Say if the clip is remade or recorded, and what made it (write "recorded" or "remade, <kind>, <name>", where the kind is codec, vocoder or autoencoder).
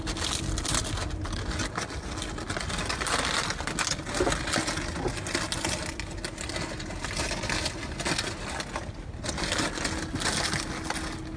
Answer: recorded